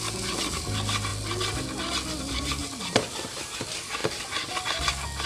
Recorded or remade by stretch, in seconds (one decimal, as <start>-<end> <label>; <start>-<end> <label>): 0.0-2.6 recorded; 2.6-3.4 remade; 3.4-4.0 recorded; 4.0-4.8 remade; 4.8-5.3 recorded